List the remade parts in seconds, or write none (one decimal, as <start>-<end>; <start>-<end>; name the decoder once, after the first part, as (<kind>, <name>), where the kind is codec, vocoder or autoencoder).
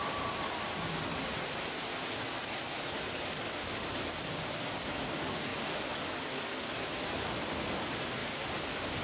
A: none